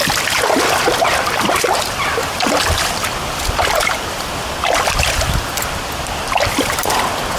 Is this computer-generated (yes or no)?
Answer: no